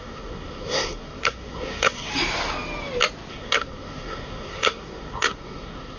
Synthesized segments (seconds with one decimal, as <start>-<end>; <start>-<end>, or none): 0.0-2.1; 3.3-6.0